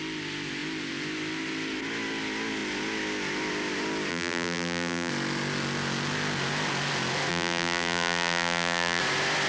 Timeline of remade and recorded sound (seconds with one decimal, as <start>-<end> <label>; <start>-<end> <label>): 0.0-4.1 recorded; 4.1-5.1 remade; 5.1-7.3 recorded; 7.3-9.0 remade; 9.0-9.5 recorded